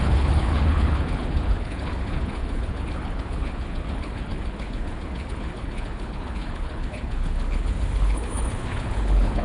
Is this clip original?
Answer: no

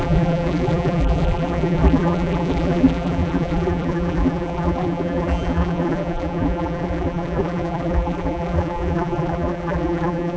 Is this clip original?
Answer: no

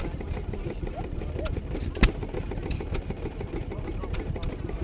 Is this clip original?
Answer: yes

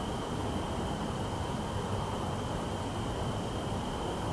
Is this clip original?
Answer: yes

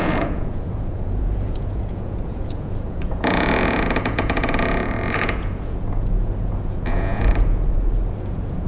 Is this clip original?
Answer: no